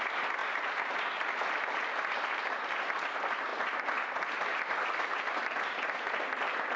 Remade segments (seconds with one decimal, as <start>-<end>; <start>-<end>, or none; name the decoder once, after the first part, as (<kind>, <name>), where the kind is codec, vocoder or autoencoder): 0.4-1.8 (vocoder, BigVGAN v2); 2.4-3.1